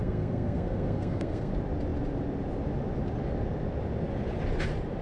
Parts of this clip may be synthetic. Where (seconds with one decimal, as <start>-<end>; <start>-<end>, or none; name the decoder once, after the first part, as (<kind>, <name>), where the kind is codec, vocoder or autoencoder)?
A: 0.0-1.5 (codec, SNAC)

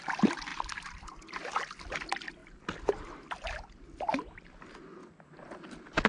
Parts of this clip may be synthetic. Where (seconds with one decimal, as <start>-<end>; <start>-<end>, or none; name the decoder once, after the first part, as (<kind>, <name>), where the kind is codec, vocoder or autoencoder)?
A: none